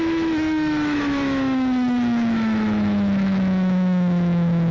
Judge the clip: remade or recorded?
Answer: remade